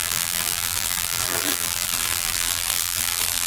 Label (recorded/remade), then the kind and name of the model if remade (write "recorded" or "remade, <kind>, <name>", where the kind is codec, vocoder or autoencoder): remade, vocoder, BigVGAN v2